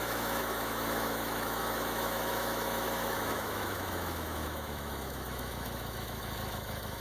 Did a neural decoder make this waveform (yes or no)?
yes